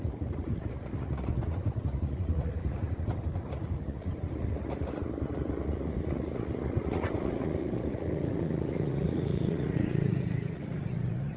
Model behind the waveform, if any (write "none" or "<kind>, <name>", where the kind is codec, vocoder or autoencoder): vocoder, Vocos